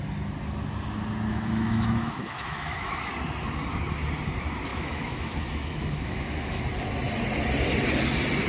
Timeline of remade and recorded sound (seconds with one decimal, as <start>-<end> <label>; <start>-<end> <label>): 0.0-1.3 recorded; 1.3-3.1 remade; 3.1-4.7 recorded; 4.7-6.6 remade; 6.6-8.5 recorded